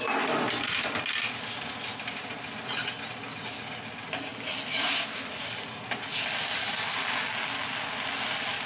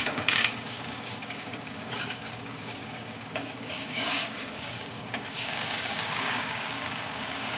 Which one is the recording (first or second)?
first